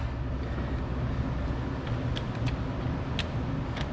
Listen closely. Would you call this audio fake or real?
real